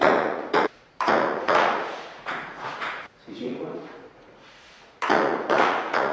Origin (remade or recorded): remade